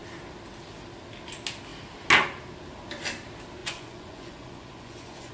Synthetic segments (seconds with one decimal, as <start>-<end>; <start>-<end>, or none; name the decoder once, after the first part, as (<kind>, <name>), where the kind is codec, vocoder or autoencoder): 3.6-5.3 (vocoder, Vocos)